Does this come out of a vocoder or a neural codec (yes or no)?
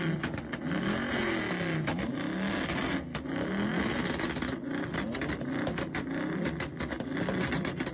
no